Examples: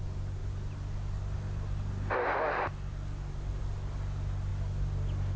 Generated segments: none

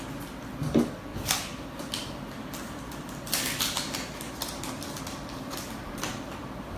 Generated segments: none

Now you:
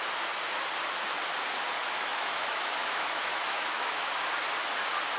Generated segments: 1.8-4.3 (autoencoder, DAC-VAE)